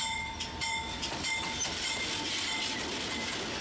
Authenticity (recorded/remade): recorded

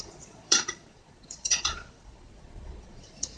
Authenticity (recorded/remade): remade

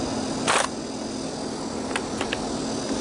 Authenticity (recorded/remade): recorded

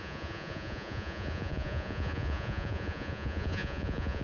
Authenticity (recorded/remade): remade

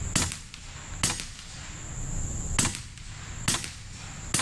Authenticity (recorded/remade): recorded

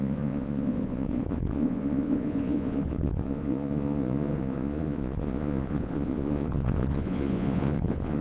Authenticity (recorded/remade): remade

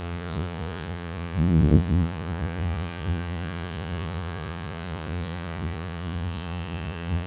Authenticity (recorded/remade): remade